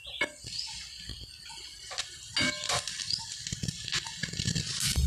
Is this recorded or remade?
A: recorded